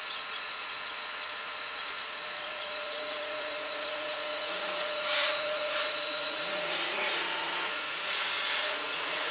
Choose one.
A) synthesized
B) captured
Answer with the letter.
A